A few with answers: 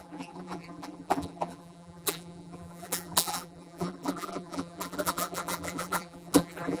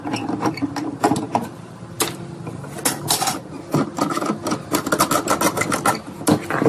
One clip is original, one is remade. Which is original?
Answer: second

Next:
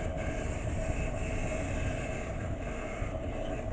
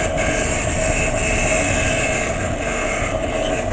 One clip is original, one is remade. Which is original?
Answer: second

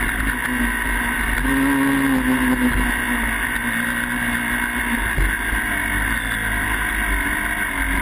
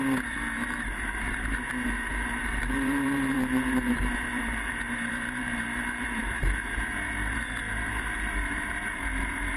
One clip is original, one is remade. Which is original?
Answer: first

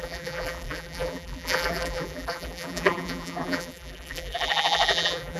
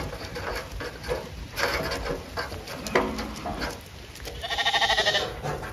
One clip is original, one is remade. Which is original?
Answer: second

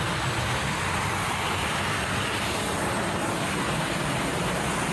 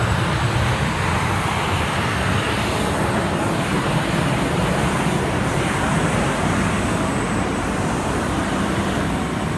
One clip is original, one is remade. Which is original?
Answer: first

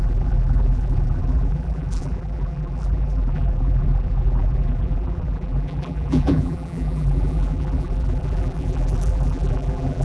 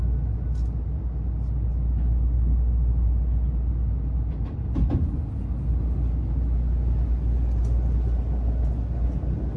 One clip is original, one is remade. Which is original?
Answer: second